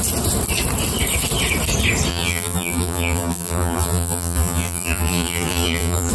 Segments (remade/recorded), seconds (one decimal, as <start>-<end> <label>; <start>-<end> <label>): 0.0-2.1 recorded; 2.1-6.1 remade